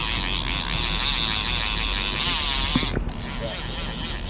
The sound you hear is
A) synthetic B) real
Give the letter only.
B